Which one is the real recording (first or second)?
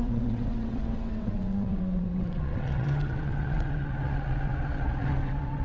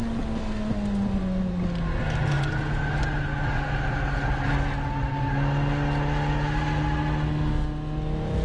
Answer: second